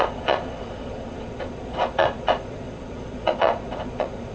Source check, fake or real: fake